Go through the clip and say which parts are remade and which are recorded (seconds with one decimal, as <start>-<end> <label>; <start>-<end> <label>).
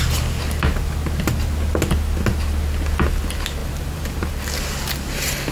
0.0-3.6 recorded; 3.6-4.3 remade; 4.3-5.5 recorded